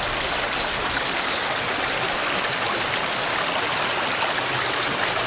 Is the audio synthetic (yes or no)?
no